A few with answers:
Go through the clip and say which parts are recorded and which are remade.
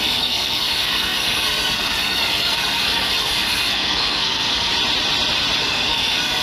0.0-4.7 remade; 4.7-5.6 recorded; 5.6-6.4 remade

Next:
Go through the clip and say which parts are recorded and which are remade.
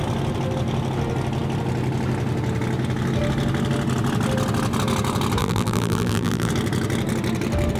0.0-5.4 recorded; 5.4-6.5 remade; 6.5-7.8 recorded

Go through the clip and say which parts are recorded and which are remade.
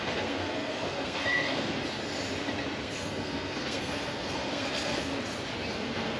0.0-1.8 remade; 1.8-2.8 recorded; 2.8-5.1 remade; 5.1-5.7 recorded; 5.7-6.2 remade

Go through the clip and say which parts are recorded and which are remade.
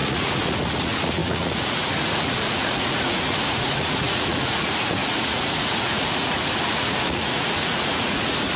0.0-8.6 remade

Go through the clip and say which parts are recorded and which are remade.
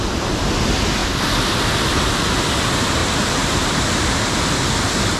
0.0-3.0 recorded; 3.0-4.0 remade; 4.0-5.2 recorded